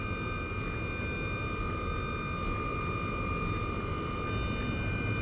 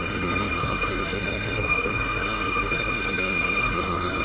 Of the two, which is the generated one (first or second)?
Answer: second